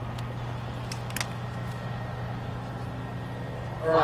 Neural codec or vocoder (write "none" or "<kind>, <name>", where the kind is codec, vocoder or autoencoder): none